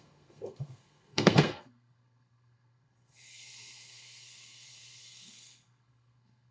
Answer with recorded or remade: remade